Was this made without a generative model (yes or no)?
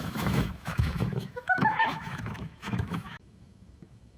no